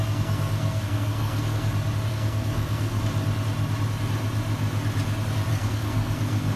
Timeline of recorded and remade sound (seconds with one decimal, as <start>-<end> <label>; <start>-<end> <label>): 0.0-1.7 remade; 1.7-2.1 recorded; 2.1-3.0 remade; 3.0-5.5 recorded; 5.5-6.6 remade